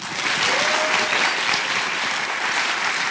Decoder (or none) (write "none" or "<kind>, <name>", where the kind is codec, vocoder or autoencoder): none